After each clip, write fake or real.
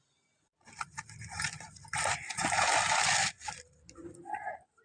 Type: real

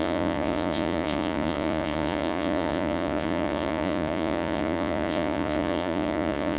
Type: fake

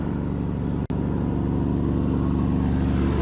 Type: real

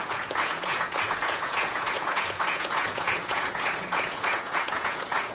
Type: fake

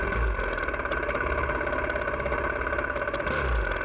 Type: real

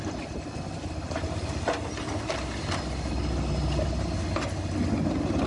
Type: real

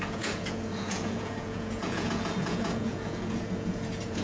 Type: fake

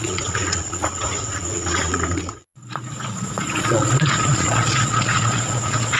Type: fake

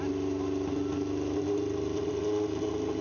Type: real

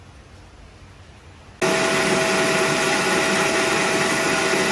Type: real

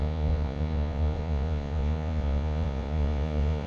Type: fake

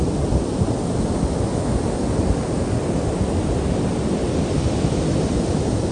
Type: real